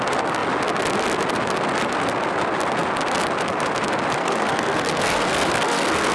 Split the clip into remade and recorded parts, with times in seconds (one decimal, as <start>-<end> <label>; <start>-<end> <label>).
0.0-4.2 recorded; 4.2-6.1 remade

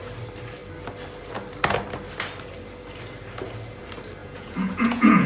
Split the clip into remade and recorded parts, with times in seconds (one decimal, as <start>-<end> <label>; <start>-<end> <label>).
0.0-4.2 recorded; 4.2-5.3 remade

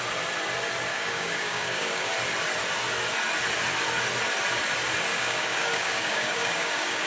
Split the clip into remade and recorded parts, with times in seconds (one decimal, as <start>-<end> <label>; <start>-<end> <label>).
0.0-0.9 recorded; 0.9-2.1 remade; 2.1-5.1 recorded; 5.1-7.1 remade

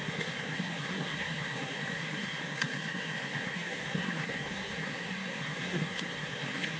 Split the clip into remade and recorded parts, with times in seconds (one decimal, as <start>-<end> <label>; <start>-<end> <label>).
0.0-6.8 remade

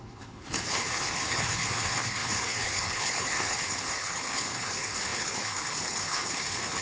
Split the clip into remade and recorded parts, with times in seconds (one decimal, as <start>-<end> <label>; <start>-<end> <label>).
0.0-6.8 remade